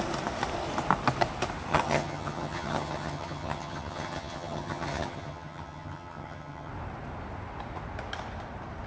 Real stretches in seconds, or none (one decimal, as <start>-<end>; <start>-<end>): 0.0-1.7; 6.7-8.9